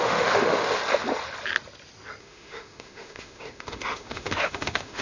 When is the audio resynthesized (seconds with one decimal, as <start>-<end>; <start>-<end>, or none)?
0.0-0.8; 2.2-5.0